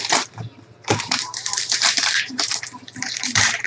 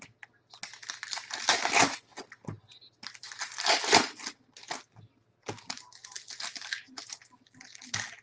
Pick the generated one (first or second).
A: first